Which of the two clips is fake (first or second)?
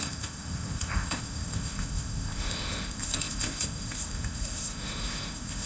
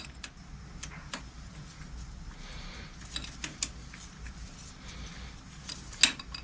first